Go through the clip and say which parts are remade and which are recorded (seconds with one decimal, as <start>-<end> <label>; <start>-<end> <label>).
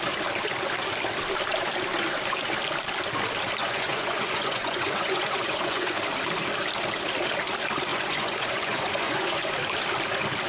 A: 0.0-3.6 recorded; 3.6-6.0 remade; 6.0-7.9 recorded; 7.9-9.5 remade; 9.5-10.5 recorded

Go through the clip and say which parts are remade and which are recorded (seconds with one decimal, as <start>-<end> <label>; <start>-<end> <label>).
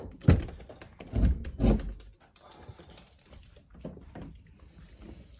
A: 0.0-5.4 recorded